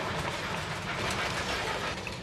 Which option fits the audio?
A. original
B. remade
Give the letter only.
A